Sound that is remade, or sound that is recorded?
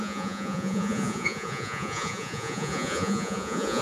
remade